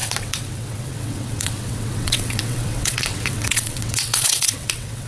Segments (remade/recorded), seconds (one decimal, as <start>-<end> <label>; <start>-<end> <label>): 0.0-5.1 remade